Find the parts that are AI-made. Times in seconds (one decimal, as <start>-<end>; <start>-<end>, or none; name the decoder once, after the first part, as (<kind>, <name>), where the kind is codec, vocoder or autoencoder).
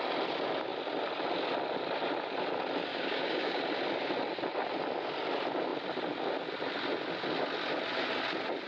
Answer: 2.9-3.6 (codec, DAC)